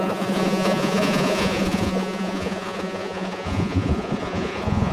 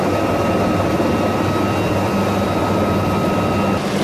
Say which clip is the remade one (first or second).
first